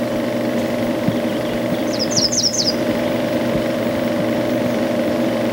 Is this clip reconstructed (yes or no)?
yes